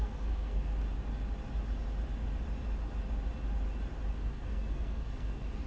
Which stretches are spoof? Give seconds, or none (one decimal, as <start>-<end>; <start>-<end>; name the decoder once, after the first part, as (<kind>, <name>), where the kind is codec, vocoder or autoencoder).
0.0-0.7 (codec, SNAC); 4.1-5.7